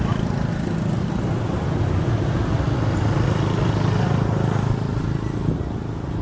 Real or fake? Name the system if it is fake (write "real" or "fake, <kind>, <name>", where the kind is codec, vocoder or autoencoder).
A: real